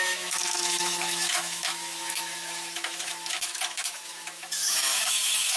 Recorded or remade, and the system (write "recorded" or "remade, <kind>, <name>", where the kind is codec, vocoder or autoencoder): remade, autoencoder, DAC-VAE